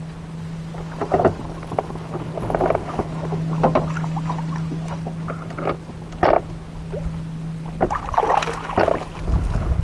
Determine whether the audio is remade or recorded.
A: recorded